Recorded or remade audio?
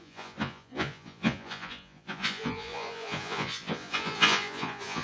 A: remade